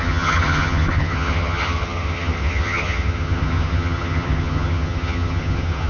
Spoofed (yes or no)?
yes